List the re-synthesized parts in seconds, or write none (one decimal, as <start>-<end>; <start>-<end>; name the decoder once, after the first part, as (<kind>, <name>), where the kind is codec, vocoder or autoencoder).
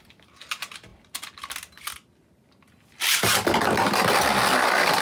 none